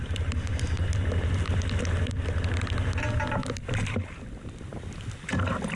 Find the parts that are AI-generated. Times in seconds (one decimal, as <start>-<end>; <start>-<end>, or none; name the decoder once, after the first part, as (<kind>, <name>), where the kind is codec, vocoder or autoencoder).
4.7-5.3 (vocoder, BigVGAN v2)

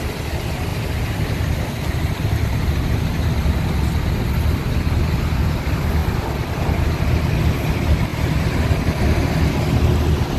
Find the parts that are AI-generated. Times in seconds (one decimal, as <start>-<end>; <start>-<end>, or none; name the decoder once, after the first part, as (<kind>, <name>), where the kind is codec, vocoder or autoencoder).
none

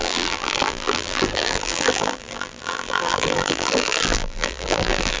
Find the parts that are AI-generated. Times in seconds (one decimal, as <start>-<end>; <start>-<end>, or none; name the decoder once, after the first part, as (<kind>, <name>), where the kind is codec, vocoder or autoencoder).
0.0-5.2 (vocoder, BigVGAN v2)

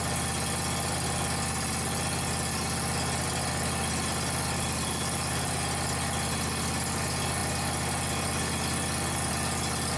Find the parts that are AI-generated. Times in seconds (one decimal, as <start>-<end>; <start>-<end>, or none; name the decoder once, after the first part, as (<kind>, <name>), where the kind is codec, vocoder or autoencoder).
none